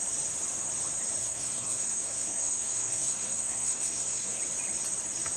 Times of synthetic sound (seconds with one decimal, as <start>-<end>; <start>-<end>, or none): 1.2-4.4